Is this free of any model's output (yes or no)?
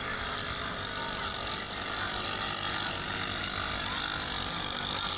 yes